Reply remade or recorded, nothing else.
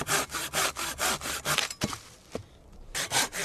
recorded